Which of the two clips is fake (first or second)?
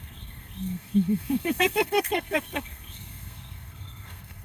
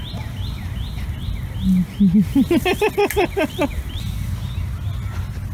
first